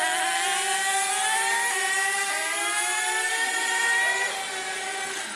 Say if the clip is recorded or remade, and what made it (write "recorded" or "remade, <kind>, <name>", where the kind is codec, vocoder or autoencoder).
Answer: recorded